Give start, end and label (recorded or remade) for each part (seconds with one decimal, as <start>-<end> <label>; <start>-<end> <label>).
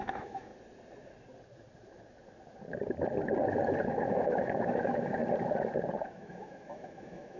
0.0-0.5 remade; 0.5-3.9 recorded; 3.9-5.2 remade; 5.2-6.0 recorded; 6.0-7.4 remade